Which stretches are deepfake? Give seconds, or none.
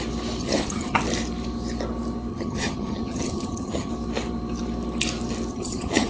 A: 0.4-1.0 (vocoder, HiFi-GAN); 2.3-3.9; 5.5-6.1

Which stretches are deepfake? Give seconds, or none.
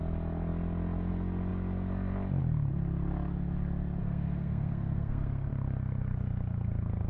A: 4.0-5.5 (codec, SNAC)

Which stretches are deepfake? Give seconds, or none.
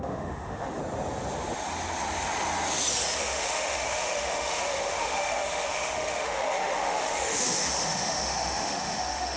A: 0.0-0.8 (autoencoder, DAC-VAE); 3.2-9.4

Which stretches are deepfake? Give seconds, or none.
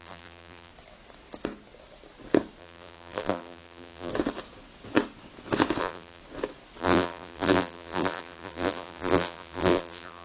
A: 0.0-0.7 (vocoder, BigVGAN v2); 2.6-4.1; 5.8-6.2; 6.8-10.2